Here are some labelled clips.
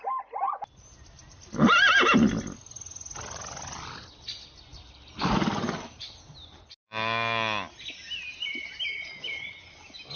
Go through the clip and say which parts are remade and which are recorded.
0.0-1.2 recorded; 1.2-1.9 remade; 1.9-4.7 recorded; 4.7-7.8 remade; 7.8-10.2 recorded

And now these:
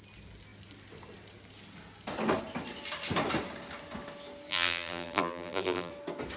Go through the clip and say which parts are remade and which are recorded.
0.0-4.5 recorded; 4.5-5.9 remade; 5.9-6.4 recorded

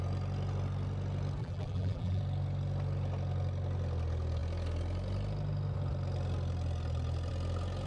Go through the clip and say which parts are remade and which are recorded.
0.0-1.4 recorded; 1.4-2.2 remade; 2.2-7.9 recorded

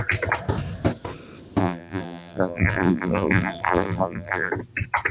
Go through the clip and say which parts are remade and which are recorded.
0.0-1.6 recorded; 1.6-4.5 remade; 4.5-5.1 recorded

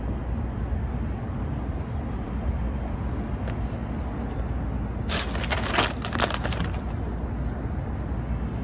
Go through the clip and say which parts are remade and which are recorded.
0.0-8.6 recorded

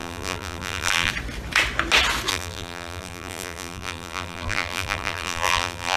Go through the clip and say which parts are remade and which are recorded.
0.0-1.1 remade; 1.1-2.3 recorded; 2.3-6.0 remade

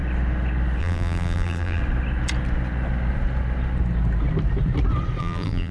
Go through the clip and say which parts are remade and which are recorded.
0.0-0.8 recorded; 0.8-1.8 remade; 1.8-5.2 recorded; 5.2-5.7 remade